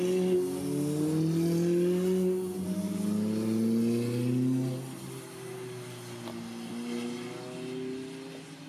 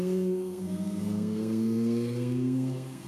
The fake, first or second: second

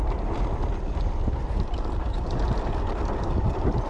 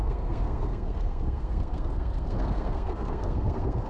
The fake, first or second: second